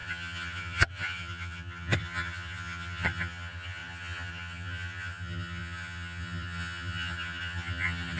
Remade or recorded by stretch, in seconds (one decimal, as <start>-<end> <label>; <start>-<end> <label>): 0.0-8.2 remade